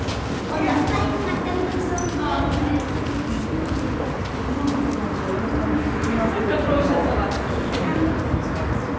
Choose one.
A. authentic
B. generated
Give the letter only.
A